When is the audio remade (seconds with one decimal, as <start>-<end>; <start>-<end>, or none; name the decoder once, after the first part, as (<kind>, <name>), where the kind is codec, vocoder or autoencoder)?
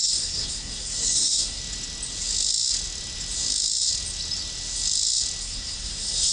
0.0-1.6 (codec, SNAC); 5.4-6.3